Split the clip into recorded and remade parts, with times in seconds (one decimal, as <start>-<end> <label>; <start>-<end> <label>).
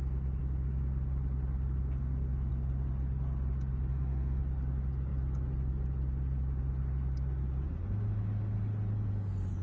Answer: 0.0-3.9 recorded; 3.9-4.4 remade; 4.4-9.6 recorded